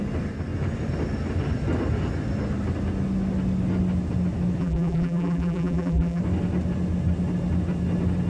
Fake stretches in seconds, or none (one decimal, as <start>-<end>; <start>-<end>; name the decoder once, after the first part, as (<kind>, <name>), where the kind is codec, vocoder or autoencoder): 4.6-6.2 (vocoder, BigVGAN v2)